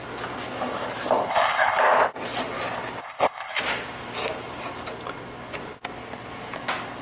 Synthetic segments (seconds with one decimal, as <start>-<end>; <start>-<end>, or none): 1.3-1.8; 3.0-3.6